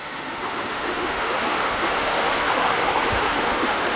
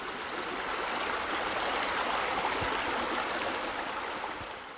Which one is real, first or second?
second